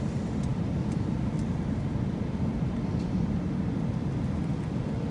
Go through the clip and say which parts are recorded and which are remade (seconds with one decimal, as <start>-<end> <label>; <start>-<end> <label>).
0.0-5.1 remade